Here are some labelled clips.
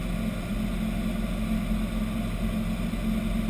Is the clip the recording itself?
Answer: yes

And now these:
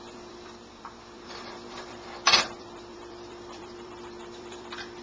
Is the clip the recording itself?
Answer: no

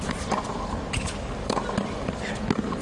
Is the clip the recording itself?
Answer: yes